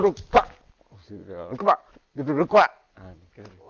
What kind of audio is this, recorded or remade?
recorded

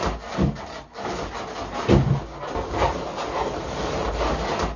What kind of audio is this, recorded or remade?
recorded